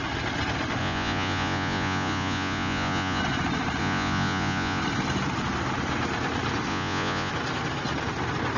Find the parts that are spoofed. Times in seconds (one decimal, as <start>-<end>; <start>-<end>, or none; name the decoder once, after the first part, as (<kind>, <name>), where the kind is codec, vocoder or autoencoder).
0.8-3.2 (vocoder, Vocos); 3.8-4.8; 6.7-7.3